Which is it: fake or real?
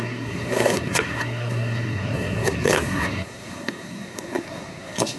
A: fake